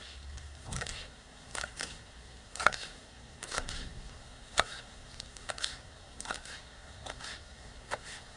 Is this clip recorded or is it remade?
remade